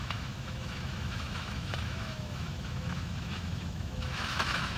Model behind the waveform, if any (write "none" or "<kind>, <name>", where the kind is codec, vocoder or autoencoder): autoencoder, DAC-VAE